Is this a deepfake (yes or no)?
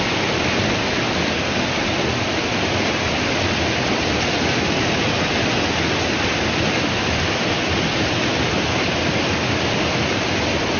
no